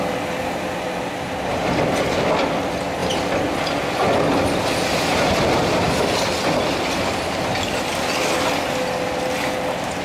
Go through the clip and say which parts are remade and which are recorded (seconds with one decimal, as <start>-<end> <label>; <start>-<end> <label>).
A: 0.0-10.0 recorded